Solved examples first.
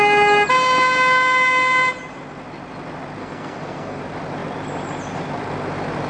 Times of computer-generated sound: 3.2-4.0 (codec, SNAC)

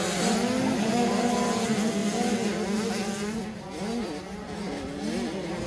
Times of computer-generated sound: none

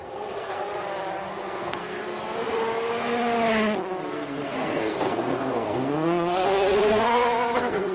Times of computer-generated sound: 0.0-0.7 (codec, SNAC); 1.3-2.0; 4.1-7.9

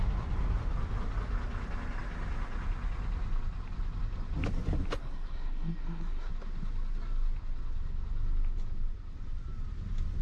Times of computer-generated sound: 5.0-6.3 (codec, SNAC)